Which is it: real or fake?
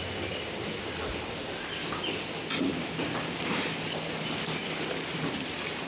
real